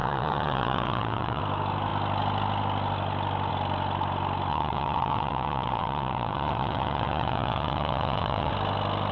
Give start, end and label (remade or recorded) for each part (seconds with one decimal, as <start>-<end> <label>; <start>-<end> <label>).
0.0-1.4 remade; 1.4-4.5 recorded; 4.5-8.5 remade; 8.5-9.1 recorded